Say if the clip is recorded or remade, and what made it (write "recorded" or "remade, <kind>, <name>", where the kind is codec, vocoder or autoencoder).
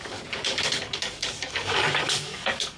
remade, codec, DAC